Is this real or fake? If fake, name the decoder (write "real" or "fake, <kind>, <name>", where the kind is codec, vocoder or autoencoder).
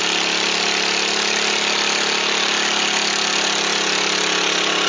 real